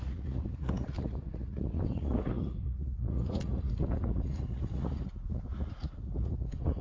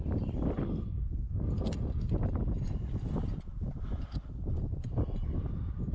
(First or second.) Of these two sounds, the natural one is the second